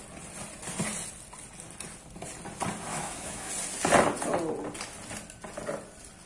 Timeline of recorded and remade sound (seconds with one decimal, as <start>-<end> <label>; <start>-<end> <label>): 0.0-2.9 recorded; 2.9-3.5 remade; 3.5-6.3 recorded